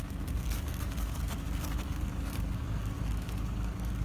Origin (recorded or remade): remade